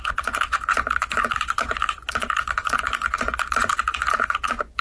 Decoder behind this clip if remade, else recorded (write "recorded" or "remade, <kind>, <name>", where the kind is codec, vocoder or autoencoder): remade, vocoder, Vocos